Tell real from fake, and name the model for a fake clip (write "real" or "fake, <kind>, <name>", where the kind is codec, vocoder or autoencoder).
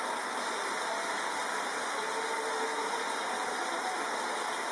real